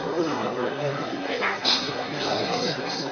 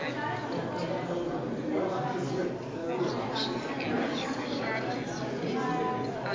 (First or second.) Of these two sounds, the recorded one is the second